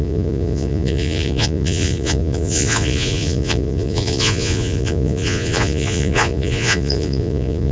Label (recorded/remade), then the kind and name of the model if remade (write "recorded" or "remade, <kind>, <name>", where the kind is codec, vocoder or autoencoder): remade, vocoder, Vocos